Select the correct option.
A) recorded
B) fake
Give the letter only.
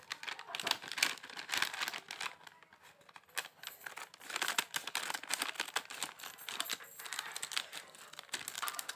A